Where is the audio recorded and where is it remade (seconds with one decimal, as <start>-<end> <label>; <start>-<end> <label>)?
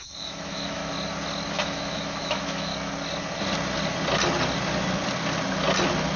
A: 0.0-0.8 remade; 0.8-1.5 recorded; 1.5-2.7 remade; 2.7-6.2 recorded